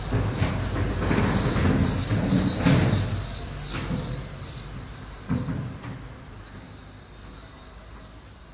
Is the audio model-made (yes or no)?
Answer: no